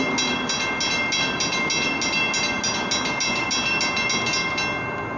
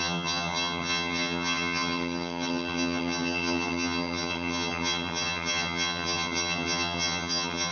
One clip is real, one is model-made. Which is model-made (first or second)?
second